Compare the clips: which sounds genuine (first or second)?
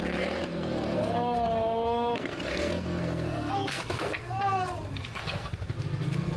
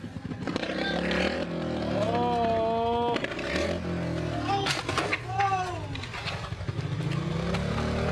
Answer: second